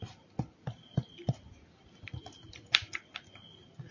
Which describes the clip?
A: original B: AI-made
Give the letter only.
A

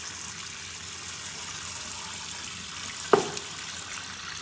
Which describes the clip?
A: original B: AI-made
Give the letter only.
A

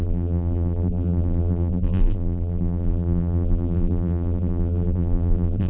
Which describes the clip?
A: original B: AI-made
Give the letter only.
B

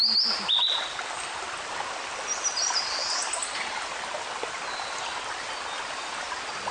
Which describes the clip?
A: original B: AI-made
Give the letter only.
A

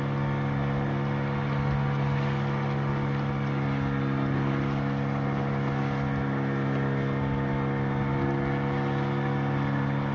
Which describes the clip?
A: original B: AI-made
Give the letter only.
A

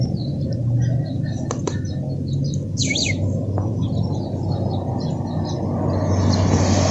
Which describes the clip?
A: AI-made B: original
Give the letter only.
B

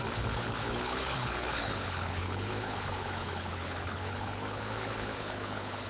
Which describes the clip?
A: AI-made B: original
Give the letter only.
A